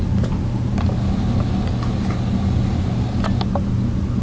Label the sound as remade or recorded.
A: recorded